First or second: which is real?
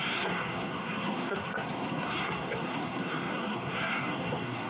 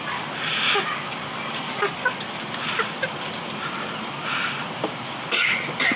second